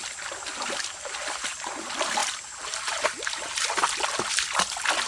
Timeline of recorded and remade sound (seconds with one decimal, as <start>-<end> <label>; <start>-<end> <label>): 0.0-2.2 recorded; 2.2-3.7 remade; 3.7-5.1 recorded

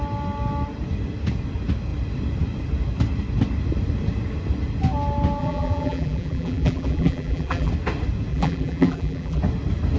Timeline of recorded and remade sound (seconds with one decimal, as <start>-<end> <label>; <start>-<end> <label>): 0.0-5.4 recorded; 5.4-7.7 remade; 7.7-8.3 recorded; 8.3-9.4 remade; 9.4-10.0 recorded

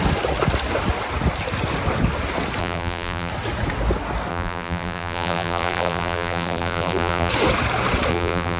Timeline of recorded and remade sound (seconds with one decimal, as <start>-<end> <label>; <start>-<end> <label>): 0.0-2.6 recorded; 2.6-3.3 remade; 3.3-4.3 recorded; 4.3-7.3 remade; 7.3-8.1 recorded; 8.1-8.6 remade

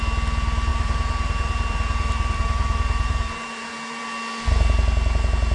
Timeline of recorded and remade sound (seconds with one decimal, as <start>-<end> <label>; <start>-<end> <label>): 0.0-0.7 recorded; 0.7-4.0 remade; 4.0-5.5 recorded

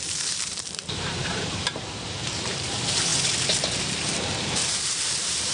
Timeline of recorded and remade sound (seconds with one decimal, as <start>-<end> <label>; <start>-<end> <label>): 0.0-3.1 remade; 3.1-4.4 recorded; 4.4-5.5 remade

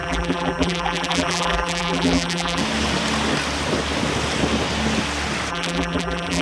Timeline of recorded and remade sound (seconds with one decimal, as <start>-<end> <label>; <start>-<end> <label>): 0.0-2.6 remade; 2.6-5.5 recorded; 5.5-6.4 remade